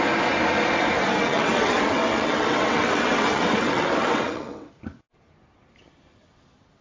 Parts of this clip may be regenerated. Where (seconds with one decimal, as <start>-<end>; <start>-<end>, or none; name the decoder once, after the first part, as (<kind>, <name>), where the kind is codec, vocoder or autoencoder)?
1.2-4.7 (vocoder, WaveNeXt)